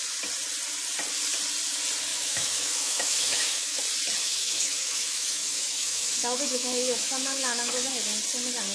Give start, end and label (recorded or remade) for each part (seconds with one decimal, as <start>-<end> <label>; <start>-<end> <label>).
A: 0.0-2.1 recorded; 2.1-3.8 remade; 3.8-4.2 recorded; 4.2-7.9 remade; 7.9-8.7 recorded